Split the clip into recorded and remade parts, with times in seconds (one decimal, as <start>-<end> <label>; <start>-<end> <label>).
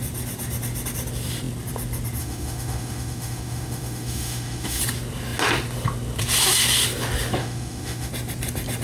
0.0-2.2 recorded; 2.2-4.8 remade; 4.8-7.4 recorded; 7.4-8.1 remade; 8.1-8.8 recorded